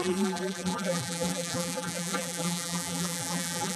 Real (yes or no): no